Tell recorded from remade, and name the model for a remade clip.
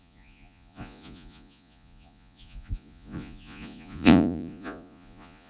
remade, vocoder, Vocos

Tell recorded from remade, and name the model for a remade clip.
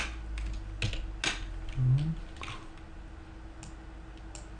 recorded